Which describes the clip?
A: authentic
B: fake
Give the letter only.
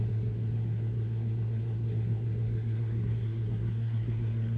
B